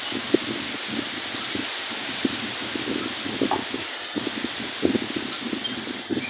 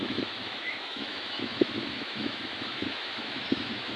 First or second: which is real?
first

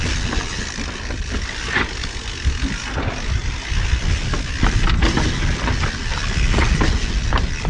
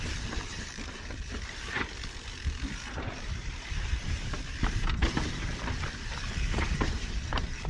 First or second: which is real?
first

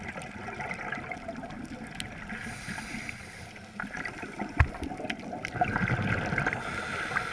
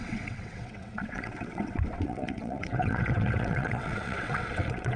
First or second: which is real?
first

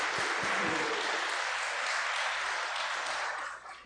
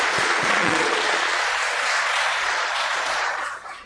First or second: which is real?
first